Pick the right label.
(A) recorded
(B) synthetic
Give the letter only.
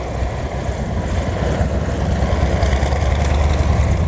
A